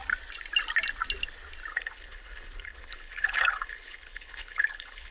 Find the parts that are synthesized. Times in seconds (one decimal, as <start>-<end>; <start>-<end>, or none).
1.7-5.1